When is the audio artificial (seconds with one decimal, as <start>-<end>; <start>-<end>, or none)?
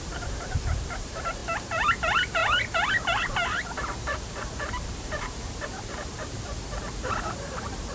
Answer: 0.0-2.4; 3.8-7.9